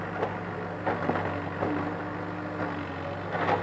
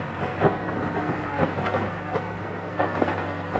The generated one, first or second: second